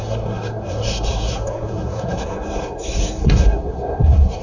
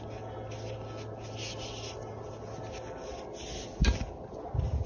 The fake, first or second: first